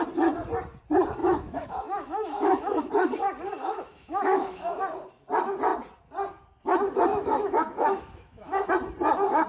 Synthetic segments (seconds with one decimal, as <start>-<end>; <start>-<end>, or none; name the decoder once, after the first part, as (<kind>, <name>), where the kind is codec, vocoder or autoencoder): 1.2-2.9 (autoencoder, DAC-VAE); 3.6-4.8; 7.1-8.7